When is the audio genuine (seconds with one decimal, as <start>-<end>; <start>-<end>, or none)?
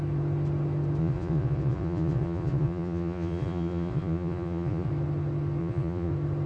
0.0-1.0; 4.9-5.6; 6.1-6.5